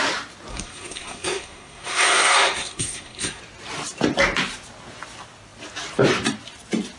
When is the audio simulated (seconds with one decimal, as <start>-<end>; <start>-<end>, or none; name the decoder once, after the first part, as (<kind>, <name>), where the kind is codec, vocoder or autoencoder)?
0.5-3.4 (codec, SNAC)